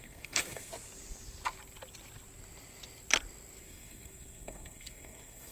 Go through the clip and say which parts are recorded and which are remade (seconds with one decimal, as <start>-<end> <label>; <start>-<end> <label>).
0.0-0.7 remade; 0.7-3.6 recorded; 3.6-5.5 remade

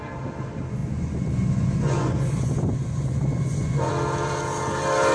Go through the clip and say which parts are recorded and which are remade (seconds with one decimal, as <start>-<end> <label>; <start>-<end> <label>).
0.0-0.8 recorded; 0.8-3.9 remade; 3.9-5.1 recorded

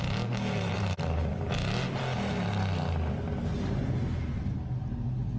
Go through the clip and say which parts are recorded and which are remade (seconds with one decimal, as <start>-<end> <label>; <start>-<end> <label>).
0.0-0.7 recorded; 0.7-1.4 remade; 1.4-5.4 recorded

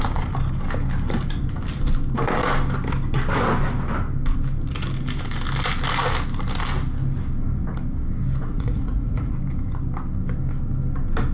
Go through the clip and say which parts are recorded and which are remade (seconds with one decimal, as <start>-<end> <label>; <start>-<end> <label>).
0.0-8.5 recorded; 8.5-9.3 remade; 9.3-11.3 recorded

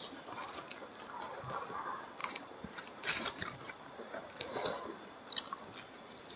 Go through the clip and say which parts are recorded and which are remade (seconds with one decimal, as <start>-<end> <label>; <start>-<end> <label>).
0.0-2.2 recorded; 2.2-4.4 remade; 4.4-6.4 recorded